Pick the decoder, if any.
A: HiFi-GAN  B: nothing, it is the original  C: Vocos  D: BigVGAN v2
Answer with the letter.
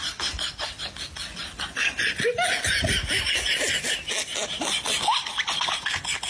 B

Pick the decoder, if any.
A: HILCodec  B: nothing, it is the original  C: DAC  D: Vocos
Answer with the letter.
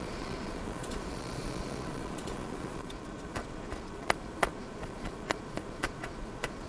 D